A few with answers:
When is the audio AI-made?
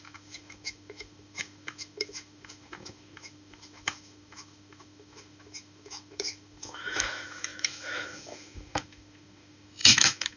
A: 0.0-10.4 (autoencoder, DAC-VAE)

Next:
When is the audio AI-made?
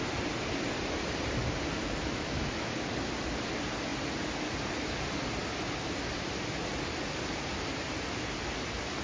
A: 1.8-2.7 (autoencoder, DAC-VAE)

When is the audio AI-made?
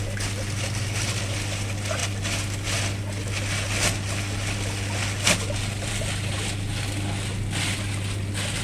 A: none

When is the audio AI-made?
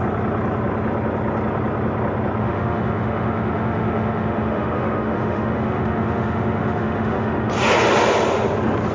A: 2.4-7.5 (autoencoder, DAC-VAE)